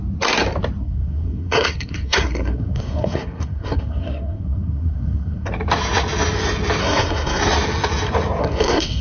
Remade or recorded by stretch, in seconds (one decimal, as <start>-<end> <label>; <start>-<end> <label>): 0.0-0.8 recorded; 0.8-5.5 remade; 5.5-6.8 recorded; 6.8-7.4 remade; 7.4-8.4 recorded; 8.4-9.0 remade